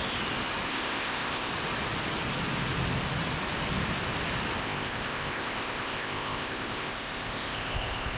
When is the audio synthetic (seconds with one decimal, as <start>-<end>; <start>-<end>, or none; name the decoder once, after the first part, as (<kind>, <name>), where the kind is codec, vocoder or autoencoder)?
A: 0.7-1.5 (codec, ZipCodec); 4.6-8.2